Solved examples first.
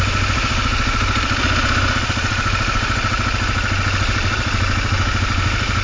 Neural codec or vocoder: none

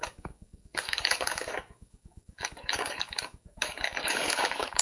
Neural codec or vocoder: codec, DAC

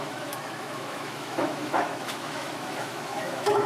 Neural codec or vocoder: autoencoder, DAC-VAE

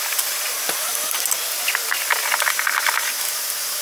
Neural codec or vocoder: none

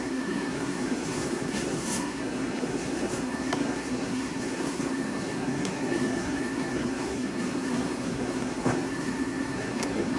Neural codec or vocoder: codec, SNAC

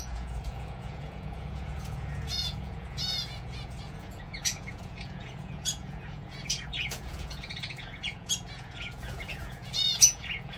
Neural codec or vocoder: vocoder, Vocos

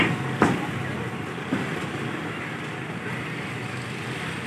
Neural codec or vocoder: none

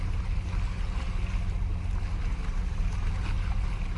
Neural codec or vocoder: none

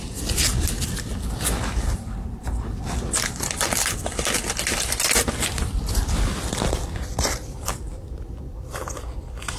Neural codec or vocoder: vocoder, BigVGAN v2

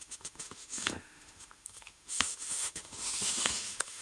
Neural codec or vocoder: autoencoder, DAC-VAE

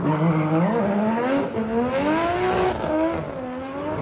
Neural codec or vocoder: none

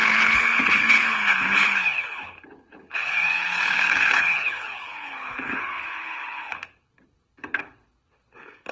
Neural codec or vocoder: codec, HILCodec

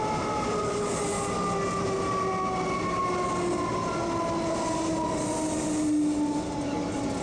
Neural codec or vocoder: none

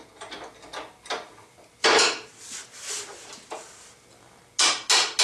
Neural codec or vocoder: none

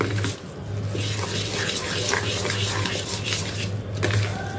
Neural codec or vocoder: none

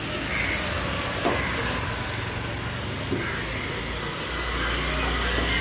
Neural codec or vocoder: none